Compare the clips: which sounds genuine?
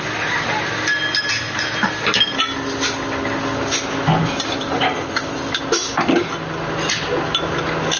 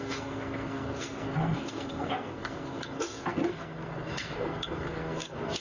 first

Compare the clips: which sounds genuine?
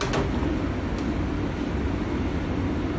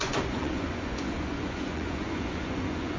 first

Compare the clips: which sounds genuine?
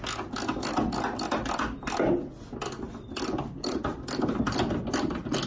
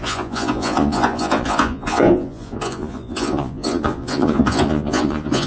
first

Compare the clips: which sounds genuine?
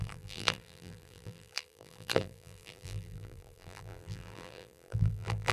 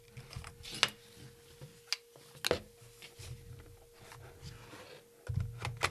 second